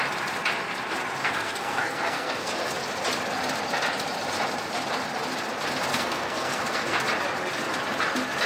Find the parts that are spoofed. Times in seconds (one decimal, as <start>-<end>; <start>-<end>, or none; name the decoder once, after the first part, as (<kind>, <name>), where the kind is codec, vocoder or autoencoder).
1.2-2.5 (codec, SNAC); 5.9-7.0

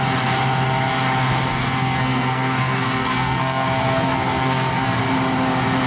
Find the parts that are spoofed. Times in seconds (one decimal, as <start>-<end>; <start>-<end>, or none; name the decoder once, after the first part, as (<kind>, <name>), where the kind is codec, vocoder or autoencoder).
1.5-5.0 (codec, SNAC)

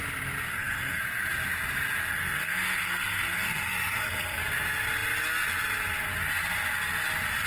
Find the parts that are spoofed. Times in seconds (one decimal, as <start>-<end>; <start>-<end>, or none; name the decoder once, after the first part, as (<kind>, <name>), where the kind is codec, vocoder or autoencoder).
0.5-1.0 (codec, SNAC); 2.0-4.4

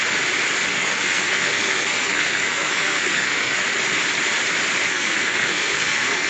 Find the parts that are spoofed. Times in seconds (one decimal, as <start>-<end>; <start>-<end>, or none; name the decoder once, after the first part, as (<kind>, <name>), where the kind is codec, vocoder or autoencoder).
0.7-3.6 (codec, SNAC); 4.9-6.3

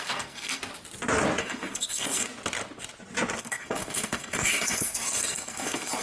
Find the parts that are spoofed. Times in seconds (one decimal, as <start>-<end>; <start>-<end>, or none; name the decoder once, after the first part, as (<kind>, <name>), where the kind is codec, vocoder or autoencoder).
0.0-0.6 (codec, SNAC); 1.4-2.3; 3.4-6.0

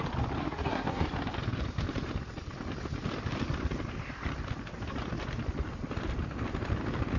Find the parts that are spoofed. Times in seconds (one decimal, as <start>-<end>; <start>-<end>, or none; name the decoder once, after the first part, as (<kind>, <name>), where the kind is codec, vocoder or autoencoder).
0.4-1.0 (codec, SNAC)